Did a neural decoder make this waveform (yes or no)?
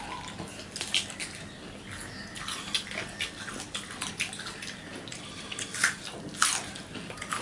no